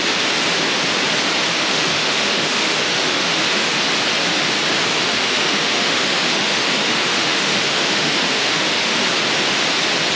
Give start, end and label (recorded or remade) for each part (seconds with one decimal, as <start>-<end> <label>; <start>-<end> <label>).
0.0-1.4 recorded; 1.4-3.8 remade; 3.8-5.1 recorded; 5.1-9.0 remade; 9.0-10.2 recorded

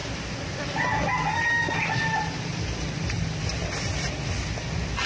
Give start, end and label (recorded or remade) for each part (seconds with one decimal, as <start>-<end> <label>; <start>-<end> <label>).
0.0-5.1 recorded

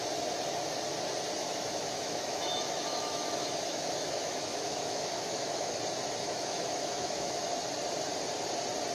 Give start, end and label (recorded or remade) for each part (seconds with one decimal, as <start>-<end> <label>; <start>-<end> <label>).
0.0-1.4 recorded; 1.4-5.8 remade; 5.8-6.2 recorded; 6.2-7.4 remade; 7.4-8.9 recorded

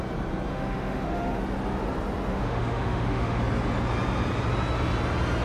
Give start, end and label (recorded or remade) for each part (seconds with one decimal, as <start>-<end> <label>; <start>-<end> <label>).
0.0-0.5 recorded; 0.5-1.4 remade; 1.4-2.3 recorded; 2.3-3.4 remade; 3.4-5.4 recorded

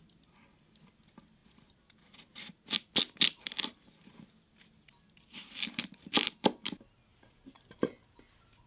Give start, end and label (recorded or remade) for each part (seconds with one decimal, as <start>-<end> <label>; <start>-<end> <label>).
0.0-8.7 recorded